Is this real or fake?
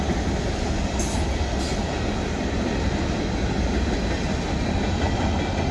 real